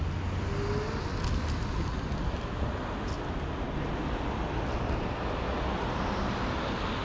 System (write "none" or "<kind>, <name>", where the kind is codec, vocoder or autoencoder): none